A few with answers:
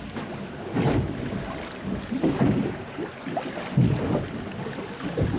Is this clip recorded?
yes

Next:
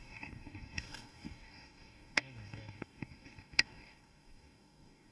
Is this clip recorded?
no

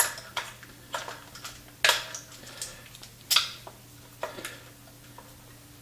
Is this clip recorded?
yes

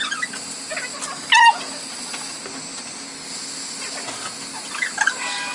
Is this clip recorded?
yes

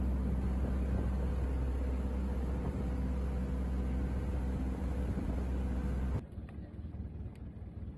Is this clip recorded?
yes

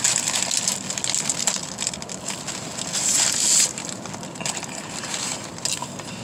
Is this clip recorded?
yes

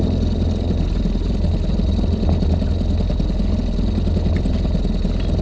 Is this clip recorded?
yes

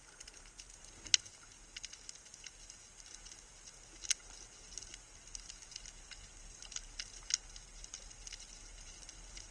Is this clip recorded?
yes